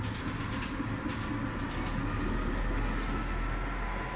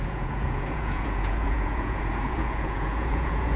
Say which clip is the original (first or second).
first